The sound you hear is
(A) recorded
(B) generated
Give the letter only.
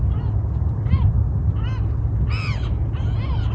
A